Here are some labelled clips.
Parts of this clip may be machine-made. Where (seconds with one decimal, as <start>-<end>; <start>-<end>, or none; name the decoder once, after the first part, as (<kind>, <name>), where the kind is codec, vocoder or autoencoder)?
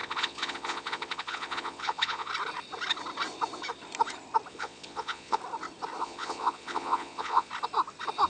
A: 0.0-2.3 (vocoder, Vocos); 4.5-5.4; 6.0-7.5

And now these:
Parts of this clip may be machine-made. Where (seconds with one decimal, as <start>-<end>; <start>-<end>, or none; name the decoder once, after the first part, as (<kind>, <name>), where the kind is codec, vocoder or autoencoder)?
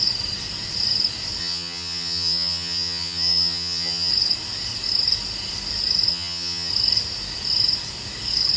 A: 1.4-4.1 (vocoder, HiFi-GAN); 6.1-6.7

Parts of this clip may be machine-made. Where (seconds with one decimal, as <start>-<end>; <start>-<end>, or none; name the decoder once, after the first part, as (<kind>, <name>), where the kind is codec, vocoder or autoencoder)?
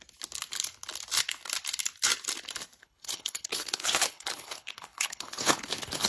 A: 2.8-6.1 (codec, HILCodec)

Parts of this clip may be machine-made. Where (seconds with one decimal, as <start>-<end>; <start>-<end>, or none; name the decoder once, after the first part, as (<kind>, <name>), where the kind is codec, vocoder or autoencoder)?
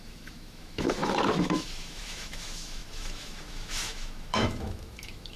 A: 0.0-5.4 (autoencoder, DAC-VAE)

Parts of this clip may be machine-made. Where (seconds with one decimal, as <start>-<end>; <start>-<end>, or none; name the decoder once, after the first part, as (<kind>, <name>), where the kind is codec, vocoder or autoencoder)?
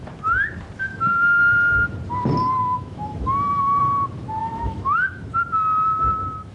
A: 0.9-1.4 (autoencoder, DAC-VAE); 2.6-3.8; 4.4-5.3